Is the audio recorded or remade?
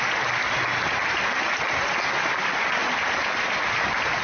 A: recorded